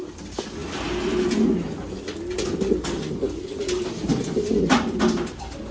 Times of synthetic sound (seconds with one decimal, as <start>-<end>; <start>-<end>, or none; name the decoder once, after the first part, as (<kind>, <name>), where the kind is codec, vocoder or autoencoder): none